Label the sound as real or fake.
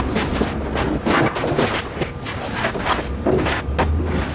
real